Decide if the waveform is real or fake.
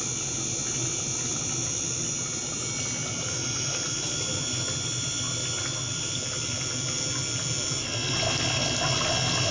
real